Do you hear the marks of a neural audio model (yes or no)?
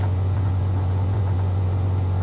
yes